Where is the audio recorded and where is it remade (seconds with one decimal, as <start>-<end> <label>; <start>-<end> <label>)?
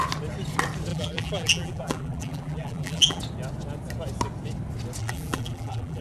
0.0-0.9 recorded; 0.9-3.2 remade; 3.2-5.0 recorded; 5.0-6.0 remade